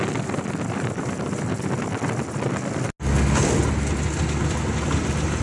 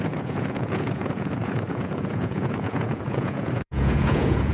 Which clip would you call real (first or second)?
first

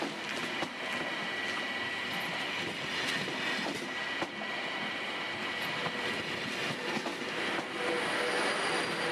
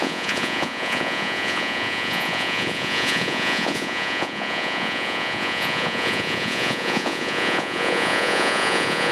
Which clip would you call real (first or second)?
first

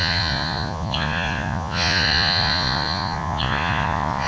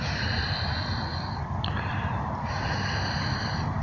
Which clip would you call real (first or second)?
second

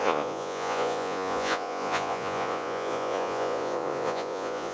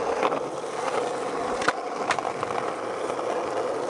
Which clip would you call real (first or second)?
second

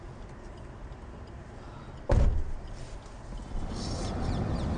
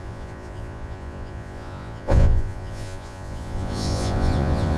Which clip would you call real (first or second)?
first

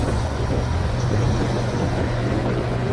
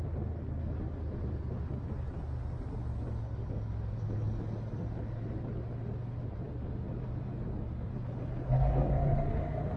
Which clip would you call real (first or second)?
second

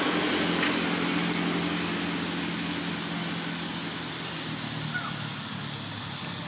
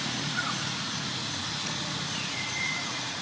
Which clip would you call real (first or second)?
first